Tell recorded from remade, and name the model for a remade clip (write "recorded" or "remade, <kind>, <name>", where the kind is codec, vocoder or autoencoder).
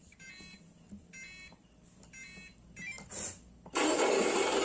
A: recorded